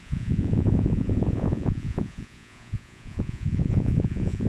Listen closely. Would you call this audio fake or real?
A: fake